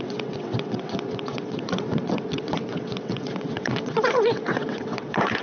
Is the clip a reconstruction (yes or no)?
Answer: yes